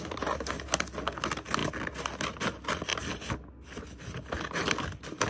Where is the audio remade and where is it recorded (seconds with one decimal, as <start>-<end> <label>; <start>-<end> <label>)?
0.0-5.3 recorded